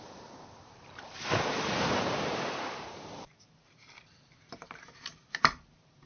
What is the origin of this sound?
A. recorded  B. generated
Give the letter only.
B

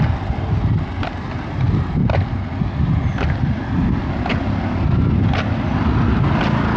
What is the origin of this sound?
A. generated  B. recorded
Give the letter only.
B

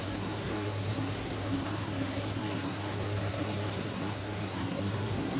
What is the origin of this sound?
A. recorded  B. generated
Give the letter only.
B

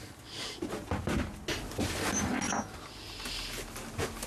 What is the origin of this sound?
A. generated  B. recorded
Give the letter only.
B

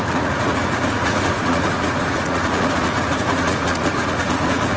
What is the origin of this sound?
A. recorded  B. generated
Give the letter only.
B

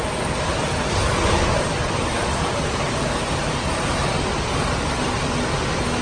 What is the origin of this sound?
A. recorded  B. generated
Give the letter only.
A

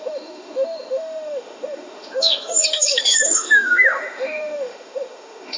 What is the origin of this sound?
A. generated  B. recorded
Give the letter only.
A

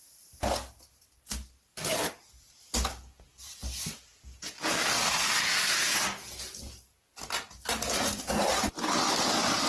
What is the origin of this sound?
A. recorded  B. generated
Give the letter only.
A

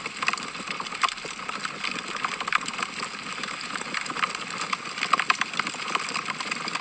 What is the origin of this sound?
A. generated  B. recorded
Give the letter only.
B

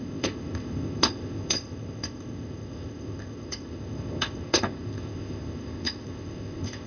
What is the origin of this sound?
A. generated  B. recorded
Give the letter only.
A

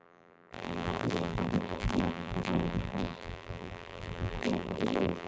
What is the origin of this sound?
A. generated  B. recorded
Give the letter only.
A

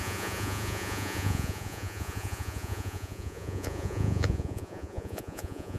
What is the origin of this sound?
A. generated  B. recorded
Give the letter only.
A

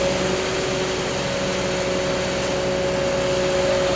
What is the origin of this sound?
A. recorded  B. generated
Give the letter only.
A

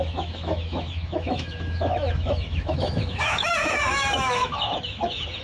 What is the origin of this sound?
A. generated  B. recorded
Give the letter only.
A